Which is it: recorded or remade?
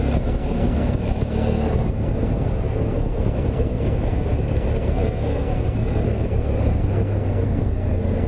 remade